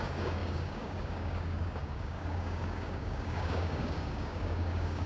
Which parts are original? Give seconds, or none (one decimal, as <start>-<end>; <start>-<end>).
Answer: none